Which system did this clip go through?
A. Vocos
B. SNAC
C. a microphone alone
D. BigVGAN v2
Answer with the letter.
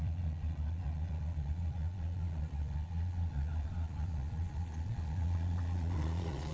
A